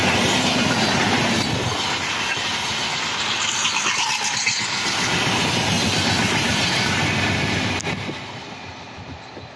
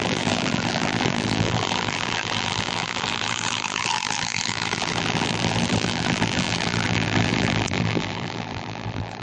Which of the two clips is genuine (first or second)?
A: first